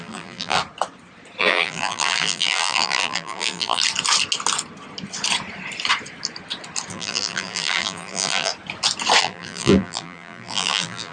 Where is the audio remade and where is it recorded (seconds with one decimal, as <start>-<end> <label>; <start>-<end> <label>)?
0.0-0.6 remade; 0.6-1.4 recorded; 1.4-3.8 remade; 3.8-6.9 recorded; 6.9-8.5 remade; 8.5-9.2 recorded; 9.2-11.1 remade